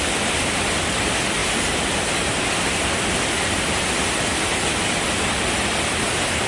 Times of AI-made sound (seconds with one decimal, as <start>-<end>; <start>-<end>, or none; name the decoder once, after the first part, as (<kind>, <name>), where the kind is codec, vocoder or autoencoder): none